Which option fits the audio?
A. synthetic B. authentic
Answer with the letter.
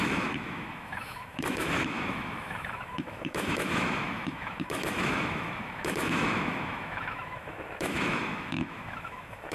A